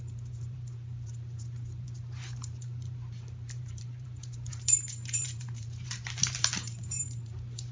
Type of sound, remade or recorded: remade